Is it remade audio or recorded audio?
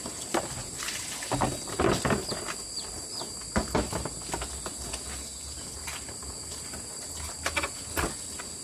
recorded